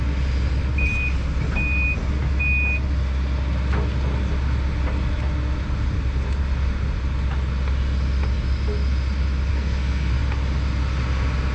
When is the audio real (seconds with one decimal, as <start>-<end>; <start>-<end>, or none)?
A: 0.0-9.5; 10.1-11.5